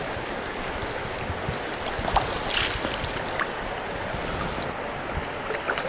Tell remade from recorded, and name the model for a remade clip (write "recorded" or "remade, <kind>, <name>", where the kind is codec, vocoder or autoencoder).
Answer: recorded